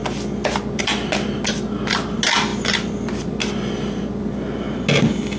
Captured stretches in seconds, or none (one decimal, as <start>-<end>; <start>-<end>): 0.0-5.4